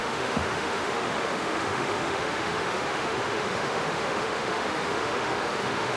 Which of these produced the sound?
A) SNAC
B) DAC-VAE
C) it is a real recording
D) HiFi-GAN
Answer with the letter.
B